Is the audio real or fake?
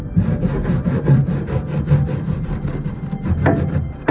real